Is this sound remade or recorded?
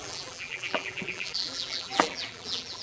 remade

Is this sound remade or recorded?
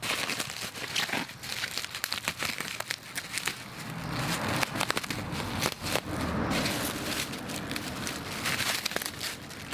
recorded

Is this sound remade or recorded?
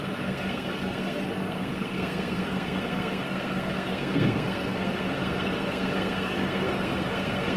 remade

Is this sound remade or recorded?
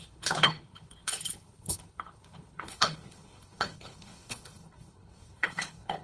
remade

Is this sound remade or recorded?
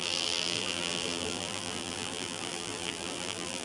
remade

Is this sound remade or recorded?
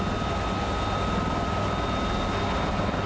recorded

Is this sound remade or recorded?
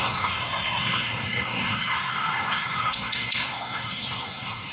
remade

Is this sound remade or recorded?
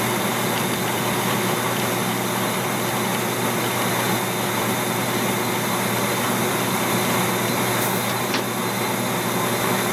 recorded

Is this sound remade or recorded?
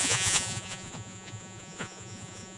remade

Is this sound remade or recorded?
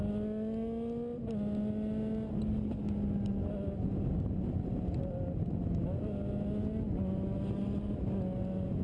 recorded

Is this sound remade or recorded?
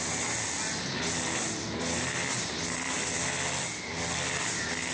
recorded